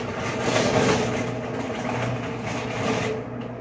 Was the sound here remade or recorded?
recorded